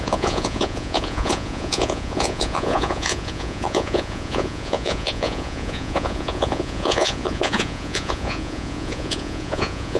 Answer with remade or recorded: remade